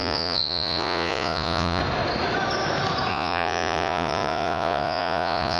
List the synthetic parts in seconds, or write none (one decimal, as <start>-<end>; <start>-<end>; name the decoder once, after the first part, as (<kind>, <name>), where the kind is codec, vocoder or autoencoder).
0.0-1.8 (vocoder, Vocos); 3.1-5.6